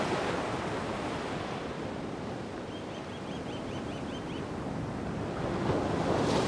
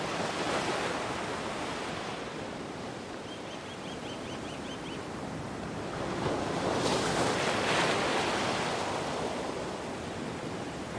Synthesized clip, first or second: second